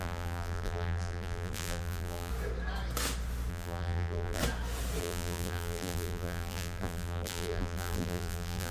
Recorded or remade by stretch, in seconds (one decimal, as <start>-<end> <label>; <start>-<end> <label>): 0.0-2.3 remade; 2.3-3.5 recorded; 3.5-4.4 remade; 4.4-5.0 recorded; 5.0-8.7 remade